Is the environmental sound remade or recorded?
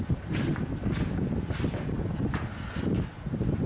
recorded